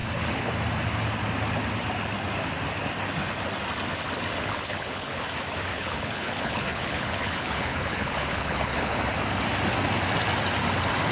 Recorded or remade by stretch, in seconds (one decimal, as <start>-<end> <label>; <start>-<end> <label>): 0.0-0.5 remade; 0.5-4.4 recorded; 4.4-5.2 remade; 5.2-5.7 recorded; 5.7-9.0 remade; 9.0-11.1 recorded